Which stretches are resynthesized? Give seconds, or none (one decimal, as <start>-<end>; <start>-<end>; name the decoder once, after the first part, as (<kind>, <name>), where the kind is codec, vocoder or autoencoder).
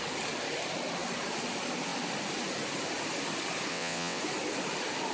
3.7-4.2 (vocoder, WaveNeXt)